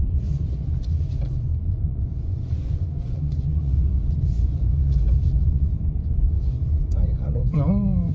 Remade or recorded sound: remade